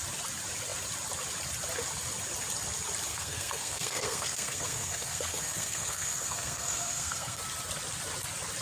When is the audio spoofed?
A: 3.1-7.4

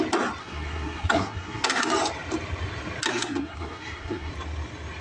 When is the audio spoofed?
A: 0.4-1.8; 3.1-4.3